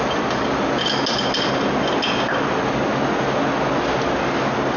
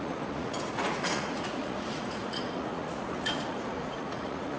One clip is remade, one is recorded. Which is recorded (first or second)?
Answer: first